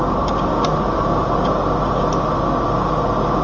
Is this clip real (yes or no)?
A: yes